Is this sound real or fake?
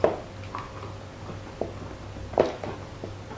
real